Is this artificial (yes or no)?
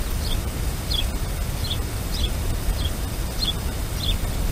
no